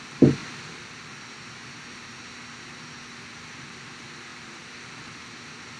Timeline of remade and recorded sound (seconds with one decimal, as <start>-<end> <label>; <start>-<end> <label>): 0.0-5.8 recorded